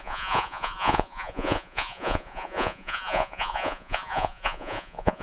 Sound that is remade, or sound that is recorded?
remade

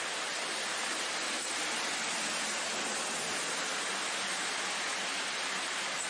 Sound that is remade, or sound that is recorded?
recorded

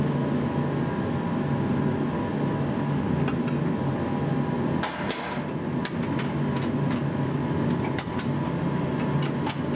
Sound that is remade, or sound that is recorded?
recorded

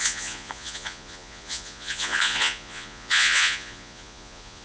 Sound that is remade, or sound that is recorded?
remade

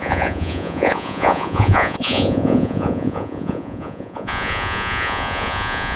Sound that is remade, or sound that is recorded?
remade